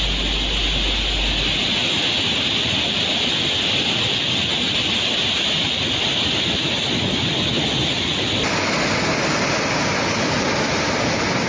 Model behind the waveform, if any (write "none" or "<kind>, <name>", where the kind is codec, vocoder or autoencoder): none